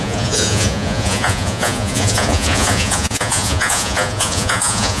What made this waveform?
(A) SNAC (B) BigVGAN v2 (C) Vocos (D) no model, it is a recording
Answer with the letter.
C